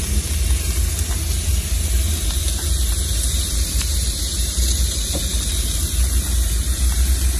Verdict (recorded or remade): remade